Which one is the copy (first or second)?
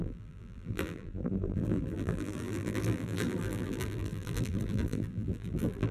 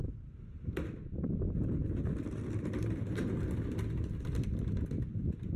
first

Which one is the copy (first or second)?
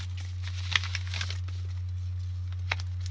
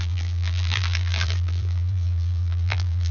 second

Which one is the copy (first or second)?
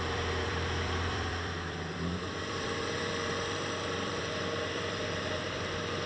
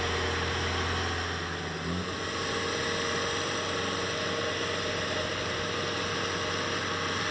first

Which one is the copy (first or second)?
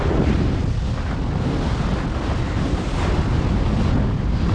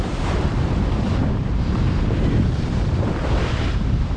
second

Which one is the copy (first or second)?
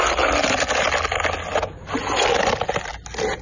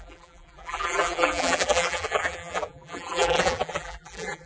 second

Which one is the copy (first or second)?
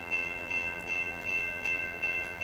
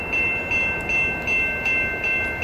first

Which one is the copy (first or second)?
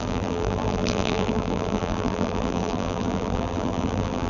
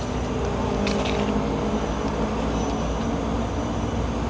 first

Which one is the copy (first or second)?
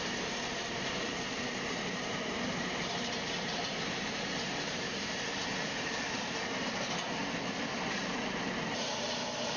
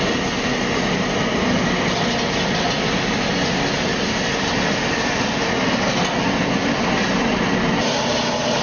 first